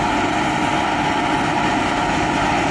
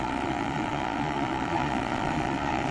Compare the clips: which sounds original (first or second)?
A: first